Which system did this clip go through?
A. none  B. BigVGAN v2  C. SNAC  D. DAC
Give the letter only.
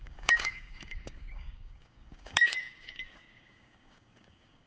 D